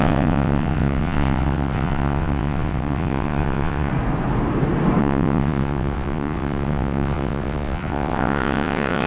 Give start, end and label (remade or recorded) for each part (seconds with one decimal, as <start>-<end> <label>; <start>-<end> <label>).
0.0-3.9 remade; 3.9-5.0 recorded; 5.0-9.1 remade

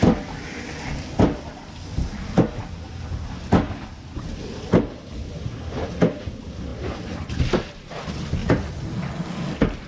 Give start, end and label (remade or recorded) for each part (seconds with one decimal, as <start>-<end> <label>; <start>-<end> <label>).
0.0-9.9 recorded